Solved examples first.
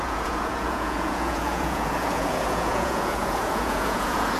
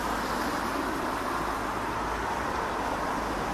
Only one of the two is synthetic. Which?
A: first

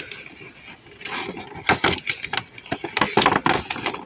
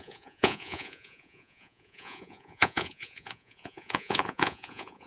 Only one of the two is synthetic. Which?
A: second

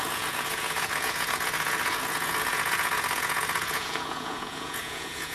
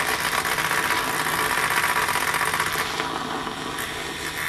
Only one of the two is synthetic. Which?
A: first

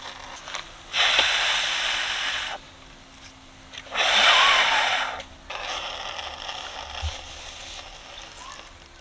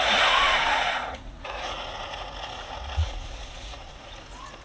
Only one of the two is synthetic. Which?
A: second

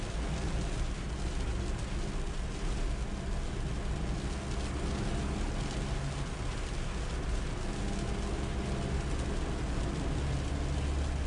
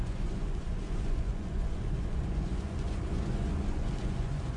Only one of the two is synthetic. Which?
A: second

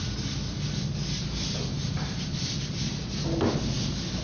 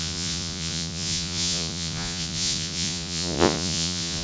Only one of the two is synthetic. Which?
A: second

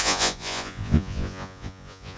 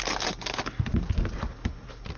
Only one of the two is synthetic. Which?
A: first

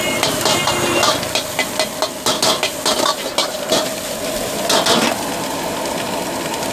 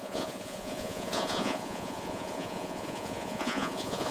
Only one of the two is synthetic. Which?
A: second